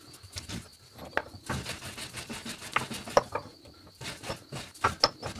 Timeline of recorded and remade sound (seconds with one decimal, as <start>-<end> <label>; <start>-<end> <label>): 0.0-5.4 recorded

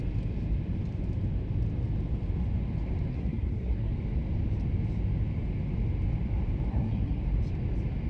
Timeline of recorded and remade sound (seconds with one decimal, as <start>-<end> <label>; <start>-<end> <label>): 0.0-3.1 recorded; 3.1-3.9 remade; 3.9-6.7 recorded; 6.7-7.2 remade; 7.2-8.1 recorded

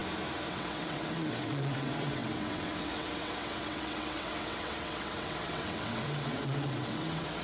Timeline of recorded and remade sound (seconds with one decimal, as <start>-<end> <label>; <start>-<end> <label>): 0.0-0.5 recorded; 0.5-7.4 remade

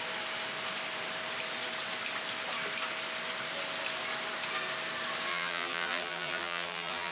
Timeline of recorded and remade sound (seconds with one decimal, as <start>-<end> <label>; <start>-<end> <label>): 0.0-5.3 recorded; 5.3-7.1 remade

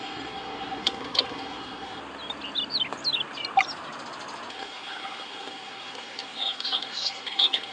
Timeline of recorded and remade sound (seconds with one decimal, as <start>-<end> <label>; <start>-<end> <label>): 0.0-2.0 remade; 2.0-4.5 recorded; 4.5-7.7 remade

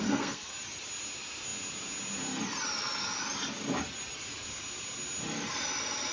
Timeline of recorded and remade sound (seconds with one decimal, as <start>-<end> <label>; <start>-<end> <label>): 0.0-0.5 remade; 0.5-6.1 recorded